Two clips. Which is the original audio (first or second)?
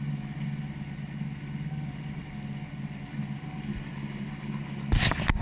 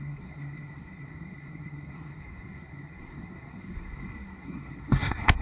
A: first